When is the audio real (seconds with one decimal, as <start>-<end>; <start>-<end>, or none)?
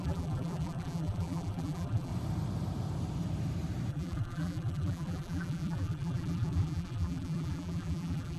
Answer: 2.1-3.9